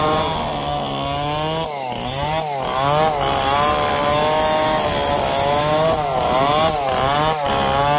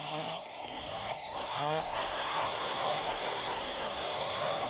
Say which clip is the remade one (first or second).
second